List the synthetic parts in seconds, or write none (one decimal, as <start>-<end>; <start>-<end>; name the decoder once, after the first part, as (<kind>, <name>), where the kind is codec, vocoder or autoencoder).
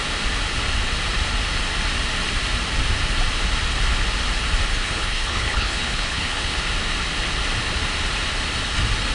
4.7-6.6 (codec, HILCodec)